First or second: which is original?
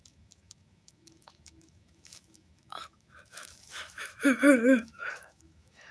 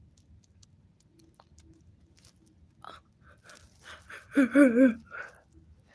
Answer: second